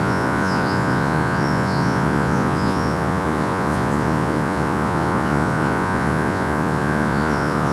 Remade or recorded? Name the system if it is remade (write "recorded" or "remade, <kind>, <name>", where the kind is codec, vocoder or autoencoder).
remade, vocoder, Vocos